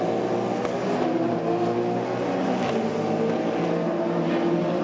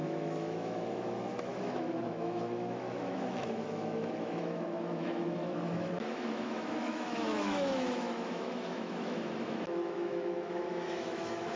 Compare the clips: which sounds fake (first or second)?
second